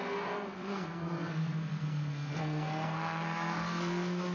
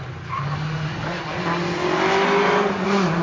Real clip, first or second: second